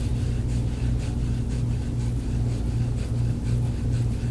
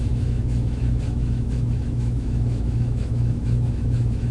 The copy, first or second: second